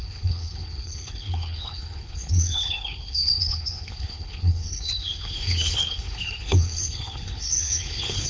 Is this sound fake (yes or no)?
yes